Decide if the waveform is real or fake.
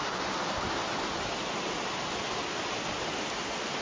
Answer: real